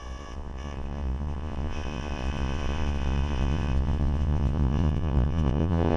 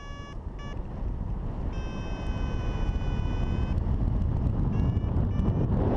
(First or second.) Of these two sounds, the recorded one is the second